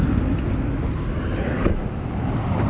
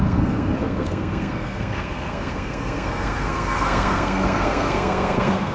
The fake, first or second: second